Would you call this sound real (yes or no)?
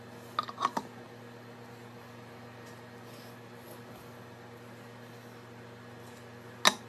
yes